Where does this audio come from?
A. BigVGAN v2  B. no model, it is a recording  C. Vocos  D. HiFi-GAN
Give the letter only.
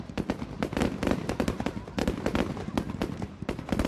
A